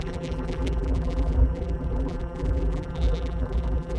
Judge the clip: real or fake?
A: fake